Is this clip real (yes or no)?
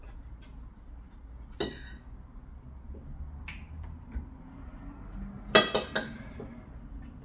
yes